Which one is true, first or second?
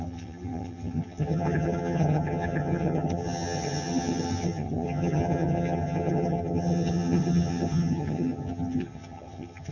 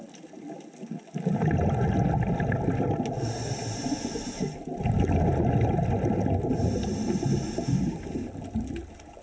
second